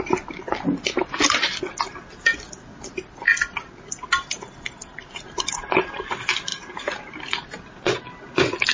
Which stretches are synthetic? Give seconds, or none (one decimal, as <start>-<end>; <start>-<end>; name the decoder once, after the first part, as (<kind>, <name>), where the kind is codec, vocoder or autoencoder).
6.5-7.1 (vocoder, BigVGAN v2)